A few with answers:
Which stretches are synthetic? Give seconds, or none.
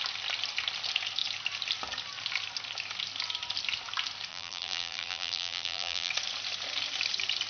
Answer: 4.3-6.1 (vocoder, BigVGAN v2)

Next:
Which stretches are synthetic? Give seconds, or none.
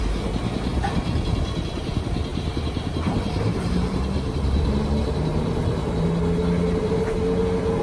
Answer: 2.3-6.1 (vocoder, BigVGAN v2)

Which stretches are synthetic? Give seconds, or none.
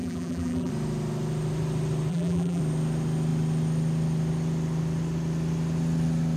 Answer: 0.0-0.7 (vocoder, BigVGAN v2); 2.1-2.6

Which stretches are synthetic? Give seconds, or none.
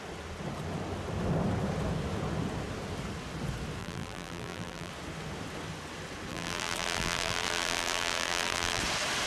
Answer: 3.8-4.9 (vocoder, BigVGAN v2); 6.3-8.8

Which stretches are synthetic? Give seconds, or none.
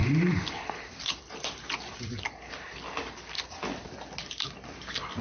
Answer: 0.0-2.1 (vocoder, BigVGAN v2)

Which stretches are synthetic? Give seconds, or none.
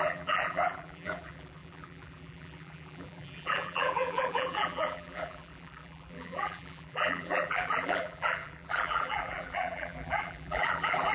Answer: 0.0-11.1 (vocoder, BigVGAN v2)